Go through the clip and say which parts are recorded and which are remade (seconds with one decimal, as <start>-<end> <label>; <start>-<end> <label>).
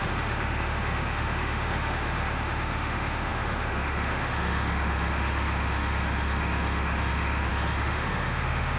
0.0-8.8 remade